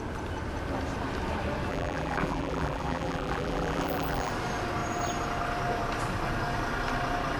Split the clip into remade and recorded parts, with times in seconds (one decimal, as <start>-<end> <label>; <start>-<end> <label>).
0.0-1.7 recorded; 1.7-4.3 remade; 4.3-7.4 recorded